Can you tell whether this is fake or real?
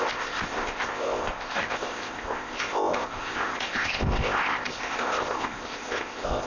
fake